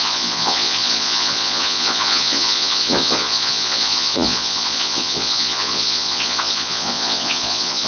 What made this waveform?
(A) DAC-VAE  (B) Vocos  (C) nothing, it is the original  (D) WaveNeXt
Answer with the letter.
B